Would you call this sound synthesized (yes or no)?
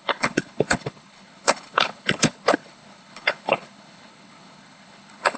yes